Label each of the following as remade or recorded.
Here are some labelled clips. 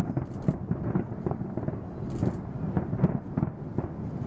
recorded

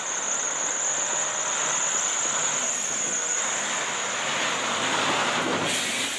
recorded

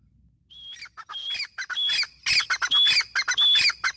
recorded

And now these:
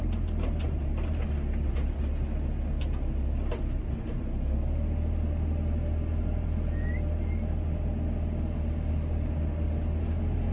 recorded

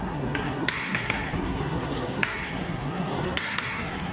remade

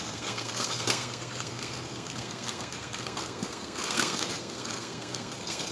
remade